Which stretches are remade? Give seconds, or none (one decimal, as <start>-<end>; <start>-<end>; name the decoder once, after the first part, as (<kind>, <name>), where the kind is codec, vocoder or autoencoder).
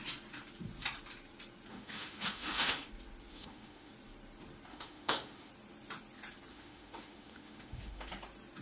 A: 1.7-2.9 (autoencoder, DAC-VAE); 3.3-3.9; 4.7-5.5; 6.5-8.1